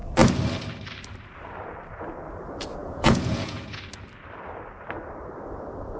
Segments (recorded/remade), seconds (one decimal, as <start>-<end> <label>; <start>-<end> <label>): 0.0-2.8 recorded; 2.8-3.8 remade; 3.8-6.0 recorded